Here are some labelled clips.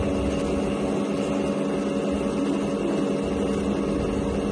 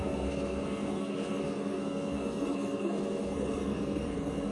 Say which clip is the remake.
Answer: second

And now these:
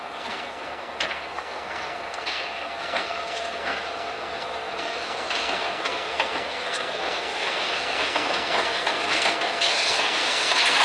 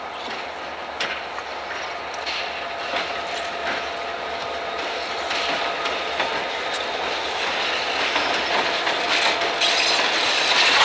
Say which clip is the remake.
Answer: first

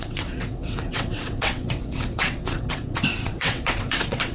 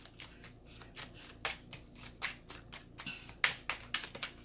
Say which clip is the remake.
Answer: first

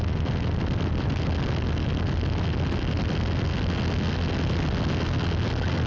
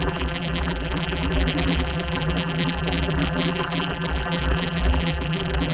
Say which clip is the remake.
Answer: second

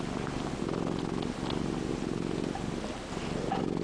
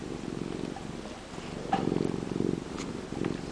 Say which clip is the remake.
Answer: second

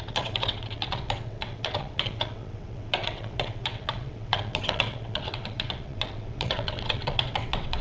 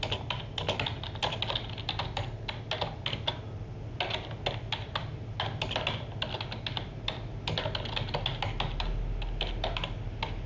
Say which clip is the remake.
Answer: first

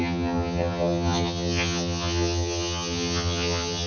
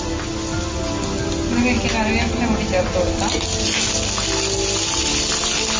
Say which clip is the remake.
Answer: first